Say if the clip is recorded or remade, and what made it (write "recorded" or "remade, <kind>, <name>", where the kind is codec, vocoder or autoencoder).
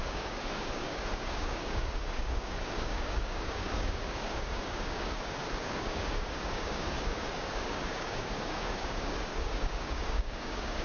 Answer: remade, codec, DAC